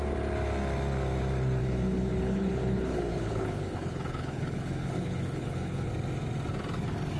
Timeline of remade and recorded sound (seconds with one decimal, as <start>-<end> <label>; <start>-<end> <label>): 0.0-1.6 recorded; 1.6-5.9 remade; 5.9-7.2 recorded